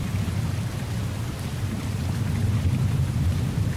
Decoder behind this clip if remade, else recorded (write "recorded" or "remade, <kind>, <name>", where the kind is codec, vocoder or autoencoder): recorded